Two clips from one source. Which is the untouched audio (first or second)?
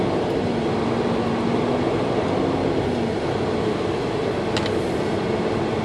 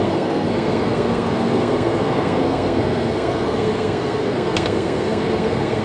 first